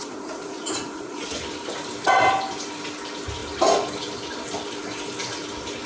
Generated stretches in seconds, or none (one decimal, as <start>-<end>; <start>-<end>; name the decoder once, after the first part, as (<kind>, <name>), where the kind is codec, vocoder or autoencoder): 0.0-1.4 (vocoder, Vocos)